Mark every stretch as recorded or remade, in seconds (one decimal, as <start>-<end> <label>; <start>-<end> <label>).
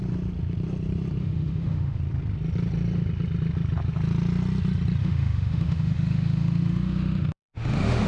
0.0-1.2 recorded; 1.2-2.0 remade; 2.0-5.0 recorded; 5.0-8.1 remade